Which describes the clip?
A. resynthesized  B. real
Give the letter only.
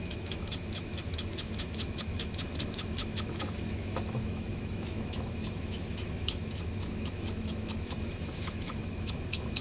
A